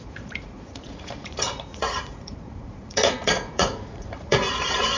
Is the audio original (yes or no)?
no